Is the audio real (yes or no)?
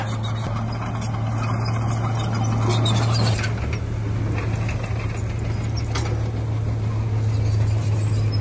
yes